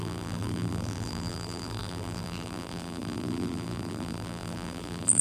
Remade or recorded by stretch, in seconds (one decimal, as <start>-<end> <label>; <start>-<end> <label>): 0.0-5.2 remade